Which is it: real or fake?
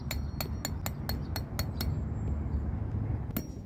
real